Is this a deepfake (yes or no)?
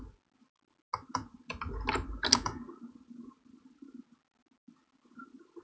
no